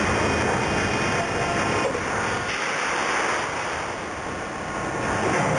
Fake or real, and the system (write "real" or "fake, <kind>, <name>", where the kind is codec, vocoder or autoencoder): real